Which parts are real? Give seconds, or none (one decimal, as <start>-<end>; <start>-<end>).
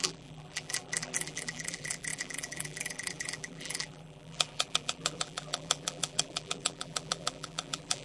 none